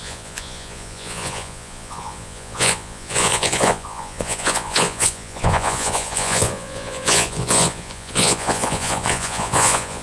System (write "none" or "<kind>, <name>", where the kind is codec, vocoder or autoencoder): vocoder, Vocos